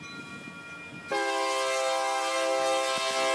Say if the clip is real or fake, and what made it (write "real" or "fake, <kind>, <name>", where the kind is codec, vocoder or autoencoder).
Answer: real